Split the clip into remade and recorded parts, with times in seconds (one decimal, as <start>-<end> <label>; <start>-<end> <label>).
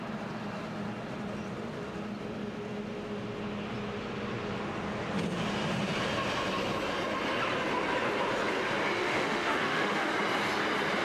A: 0.0-9.0 recorded; 9.0-10.1 remade; 10.1-11.0 recorded